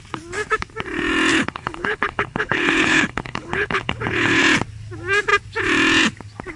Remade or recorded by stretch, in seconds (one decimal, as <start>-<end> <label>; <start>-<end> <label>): 0.0-1.3 recorded; 1.3-4.4 remade; 4.4-6.6 recorded